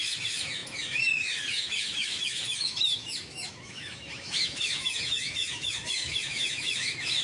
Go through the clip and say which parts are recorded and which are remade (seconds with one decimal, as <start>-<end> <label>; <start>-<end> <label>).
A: 0.0-7.2 remade